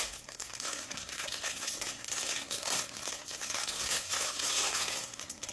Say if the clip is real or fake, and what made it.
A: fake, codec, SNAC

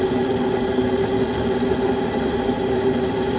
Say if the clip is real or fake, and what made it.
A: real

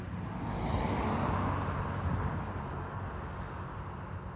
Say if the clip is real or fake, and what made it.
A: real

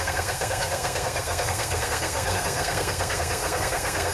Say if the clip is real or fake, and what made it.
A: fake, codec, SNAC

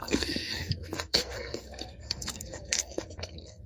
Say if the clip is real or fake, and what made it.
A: fake, codec, SNAC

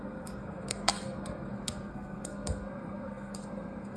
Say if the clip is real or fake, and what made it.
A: fake, codec, SNAC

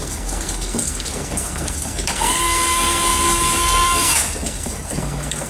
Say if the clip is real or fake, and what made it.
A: fake, codec, SNAC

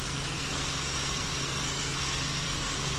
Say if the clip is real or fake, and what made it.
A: fake, codec, SNAC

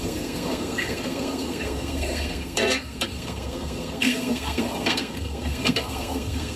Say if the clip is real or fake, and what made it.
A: fake, codec, SNAC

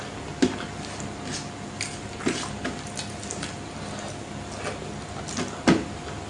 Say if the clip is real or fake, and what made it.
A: real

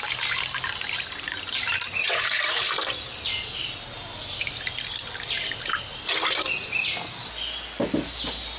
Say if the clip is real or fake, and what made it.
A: real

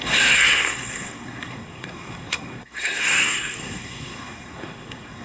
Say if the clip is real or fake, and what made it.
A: fake, codec, SNAC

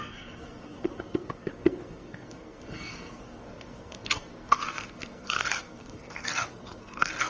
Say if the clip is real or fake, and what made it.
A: fake, codec, SNAC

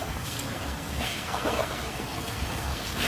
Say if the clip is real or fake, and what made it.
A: fake, codec, SNAC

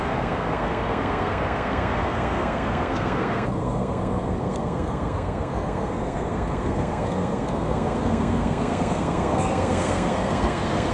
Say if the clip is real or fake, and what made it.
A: fake, codec, SNAC